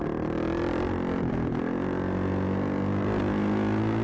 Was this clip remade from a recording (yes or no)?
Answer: no